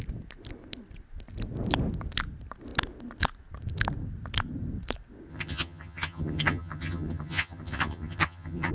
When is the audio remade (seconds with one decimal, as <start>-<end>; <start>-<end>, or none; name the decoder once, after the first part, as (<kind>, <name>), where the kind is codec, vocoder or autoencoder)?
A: 5.3-8.7 (vocoder, HiFi-GAN)